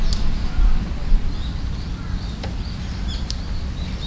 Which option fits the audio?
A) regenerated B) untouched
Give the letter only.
B